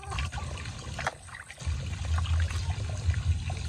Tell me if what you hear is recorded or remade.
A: recorded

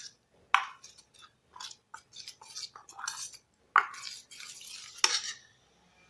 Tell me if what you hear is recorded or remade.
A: recorded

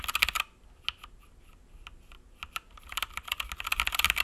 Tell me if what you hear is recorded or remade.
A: recorded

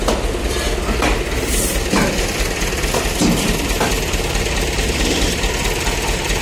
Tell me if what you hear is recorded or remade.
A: recorded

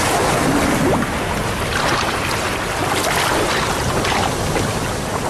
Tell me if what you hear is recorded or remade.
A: recorded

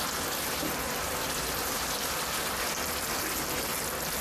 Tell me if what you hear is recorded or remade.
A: recorded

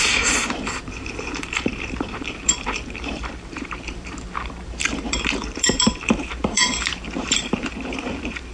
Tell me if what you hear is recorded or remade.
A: remade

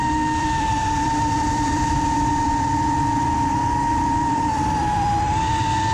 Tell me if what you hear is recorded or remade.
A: remade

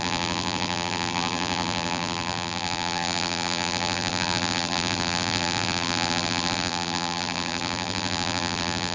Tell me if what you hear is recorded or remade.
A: remade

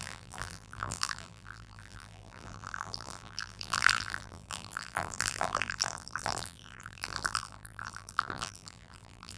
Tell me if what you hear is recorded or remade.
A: remade